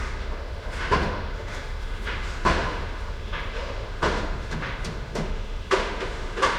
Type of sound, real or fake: fake